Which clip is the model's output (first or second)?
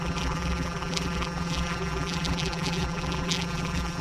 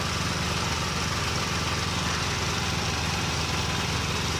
first